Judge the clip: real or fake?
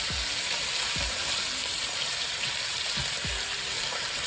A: fake